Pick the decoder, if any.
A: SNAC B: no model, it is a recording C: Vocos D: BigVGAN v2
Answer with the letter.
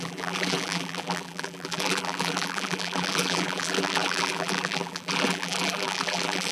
D